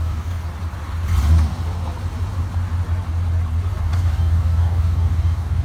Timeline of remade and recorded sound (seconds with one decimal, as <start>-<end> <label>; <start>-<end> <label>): 0.0-0.4 remade; 0.4-3.8 recorded; 3.8-5.6 remade